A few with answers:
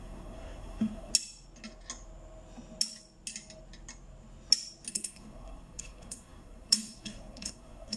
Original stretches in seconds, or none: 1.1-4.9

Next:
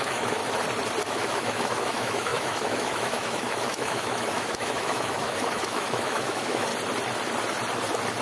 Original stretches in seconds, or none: 0.4-1.1; 6.7-8.2

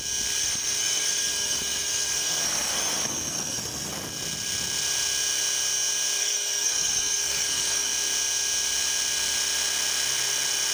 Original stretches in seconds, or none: 0.0-0.4; 3.9-6.2; 7.9-10.7

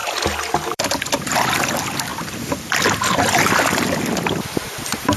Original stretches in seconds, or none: 0.9-5.2

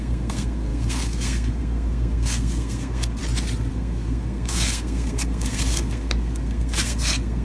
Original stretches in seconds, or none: 3.2-3.7

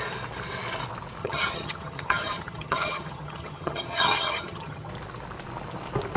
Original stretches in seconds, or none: 0.0-1.2; 4.9-6.2